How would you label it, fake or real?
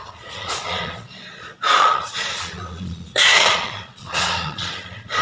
fake